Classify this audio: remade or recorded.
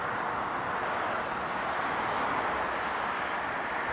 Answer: recorded